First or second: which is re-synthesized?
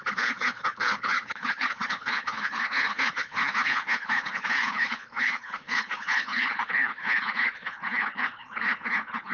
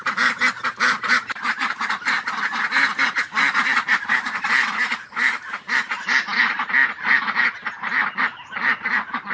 first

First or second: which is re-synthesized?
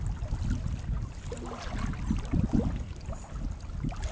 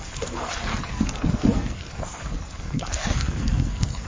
second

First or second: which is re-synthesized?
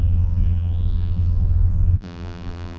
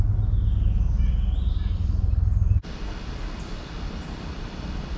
first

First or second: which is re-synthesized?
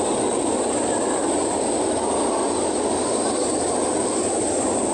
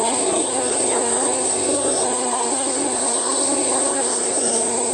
second